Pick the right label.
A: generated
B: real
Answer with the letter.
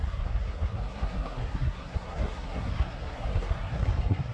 A